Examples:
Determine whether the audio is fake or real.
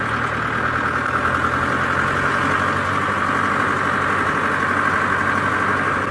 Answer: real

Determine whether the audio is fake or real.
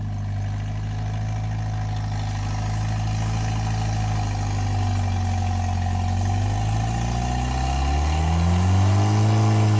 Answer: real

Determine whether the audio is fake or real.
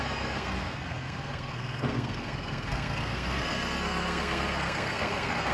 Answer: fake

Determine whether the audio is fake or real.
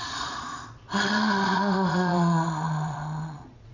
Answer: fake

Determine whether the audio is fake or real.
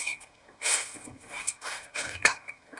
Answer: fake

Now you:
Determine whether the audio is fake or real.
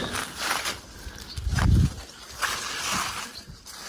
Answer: real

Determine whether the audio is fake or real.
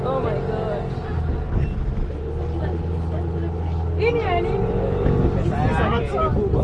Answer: real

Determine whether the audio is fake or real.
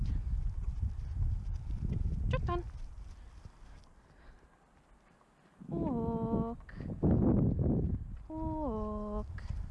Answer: real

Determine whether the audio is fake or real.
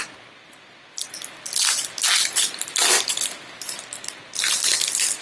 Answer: real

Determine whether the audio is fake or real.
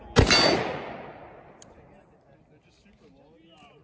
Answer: real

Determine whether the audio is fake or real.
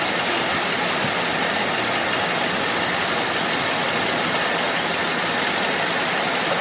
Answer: real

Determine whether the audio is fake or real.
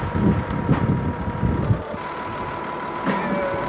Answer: real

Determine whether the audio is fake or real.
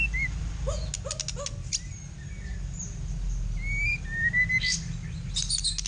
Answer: real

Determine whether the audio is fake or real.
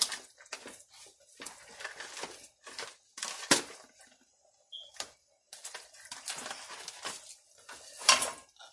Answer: real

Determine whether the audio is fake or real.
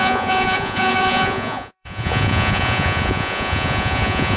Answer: fake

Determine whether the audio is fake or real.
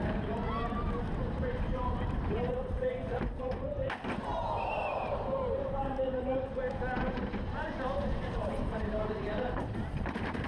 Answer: fake